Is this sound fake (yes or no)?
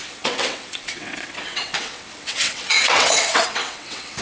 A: yes